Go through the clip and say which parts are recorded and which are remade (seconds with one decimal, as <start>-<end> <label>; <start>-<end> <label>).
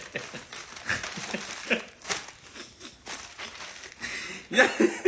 0.0-5.1 recorded